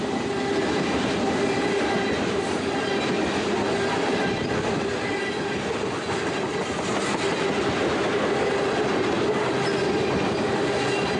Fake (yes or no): no